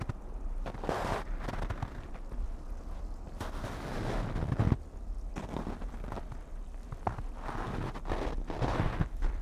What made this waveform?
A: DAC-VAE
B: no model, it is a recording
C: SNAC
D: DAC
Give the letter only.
B